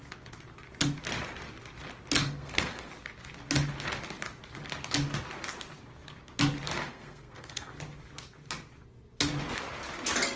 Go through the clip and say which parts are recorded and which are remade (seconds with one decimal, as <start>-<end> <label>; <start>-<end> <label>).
0.0-2.2 recorded; 2.2-2.9 remade; 2.9-6.9 recorded; 6.9-7.7 remade; 7.7-10.4 recorded